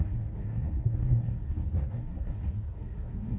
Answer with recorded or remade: remade